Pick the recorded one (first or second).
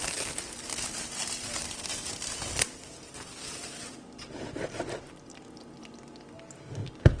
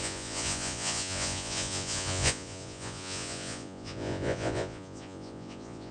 first